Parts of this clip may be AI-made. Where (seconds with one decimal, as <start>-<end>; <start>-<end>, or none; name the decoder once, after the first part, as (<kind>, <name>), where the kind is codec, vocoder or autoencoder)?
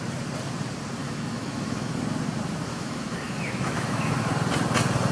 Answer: 1.0-2.0 (autoencoder, DAC-VAE); 2.7-4.1